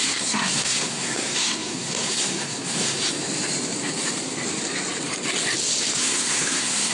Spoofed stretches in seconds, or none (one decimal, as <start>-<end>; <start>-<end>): 0.0-3.0; 6.0-6.9

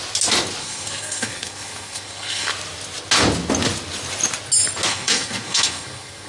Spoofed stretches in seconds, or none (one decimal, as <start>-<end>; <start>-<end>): 0.6-2.5; 4.9-6.3

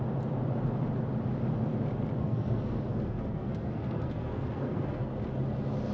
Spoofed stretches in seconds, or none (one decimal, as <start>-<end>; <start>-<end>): 2.2-5.1

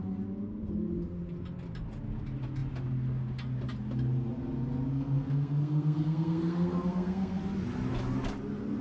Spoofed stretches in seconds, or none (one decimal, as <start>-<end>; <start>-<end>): 4.9-7.4

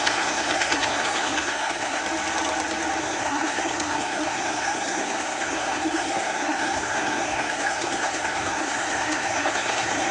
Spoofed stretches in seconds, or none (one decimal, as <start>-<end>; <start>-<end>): 0.0-2.0; 3.0-10.1

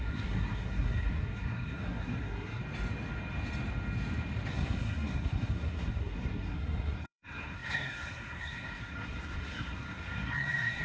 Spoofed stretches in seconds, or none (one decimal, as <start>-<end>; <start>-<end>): 0.0-2.6; 4.5-10.8

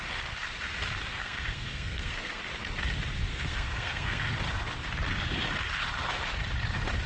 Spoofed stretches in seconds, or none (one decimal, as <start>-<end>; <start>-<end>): 1.1-2.4; 3.3-4.3